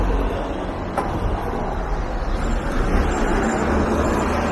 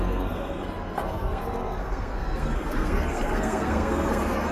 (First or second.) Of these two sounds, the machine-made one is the second